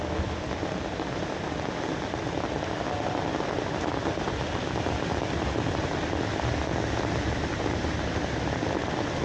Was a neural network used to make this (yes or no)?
no